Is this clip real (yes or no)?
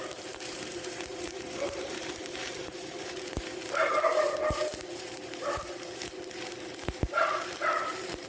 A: no